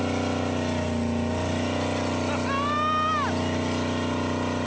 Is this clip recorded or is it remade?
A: recorded